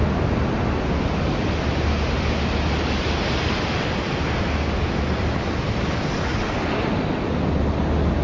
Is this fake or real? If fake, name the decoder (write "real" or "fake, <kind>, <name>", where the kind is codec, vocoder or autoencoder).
real